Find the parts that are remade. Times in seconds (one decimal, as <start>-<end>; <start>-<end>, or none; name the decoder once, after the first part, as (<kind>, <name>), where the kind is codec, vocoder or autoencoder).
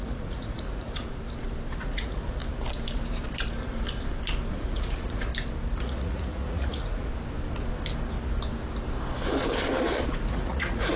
0.0-1.1 (vocoder, Vocos); 1.8-2.4; 4.5-5.3; 5.8-7.1; 10.3-11.0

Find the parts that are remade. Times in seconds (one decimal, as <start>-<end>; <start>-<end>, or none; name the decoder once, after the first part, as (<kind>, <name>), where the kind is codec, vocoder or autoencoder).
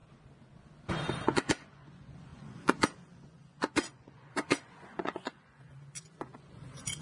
1.2-7.0 (vocoder, Vocos)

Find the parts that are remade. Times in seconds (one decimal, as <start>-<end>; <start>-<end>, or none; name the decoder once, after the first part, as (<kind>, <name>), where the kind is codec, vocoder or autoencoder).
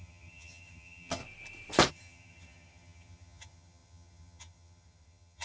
0.0-1.2 (vocoder, HiFi-GAN); 1.9-5.4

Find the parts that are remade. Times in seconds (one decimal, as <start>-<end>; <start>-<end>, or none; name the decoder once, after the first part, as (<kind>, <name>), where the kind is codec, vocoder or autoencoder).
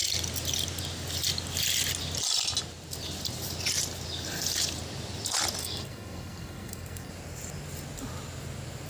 5.6-7.1 (codec, SNAC)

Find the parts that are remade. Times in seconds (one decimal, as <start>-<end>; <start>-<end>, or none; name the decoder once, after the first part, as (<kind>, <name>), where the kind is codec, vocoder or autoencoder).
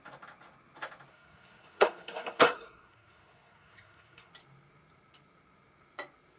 1.1-4.3 (codec, SNAC)